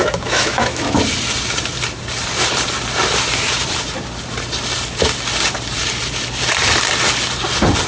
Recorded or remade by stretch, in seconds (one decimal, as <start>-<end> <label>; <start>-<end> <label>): 0.0-1.0 remade; 1.0-7.9 recorded